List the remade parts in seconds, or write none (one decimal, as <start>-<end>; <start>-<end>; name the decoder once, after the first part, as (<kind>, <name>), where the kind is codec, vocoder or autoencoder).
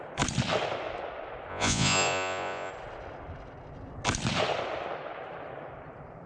1.5-2.7 (vocoder, Vocos)